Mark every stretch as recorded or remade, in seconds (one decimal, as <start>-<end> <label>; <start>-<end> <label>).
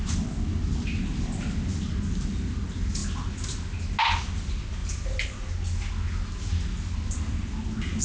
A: 0.0-8.0 recorded